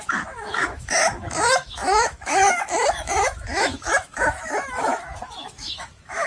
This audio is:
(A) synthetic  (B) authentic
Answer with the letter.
A